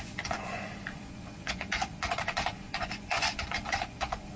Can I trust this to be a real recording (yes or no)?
no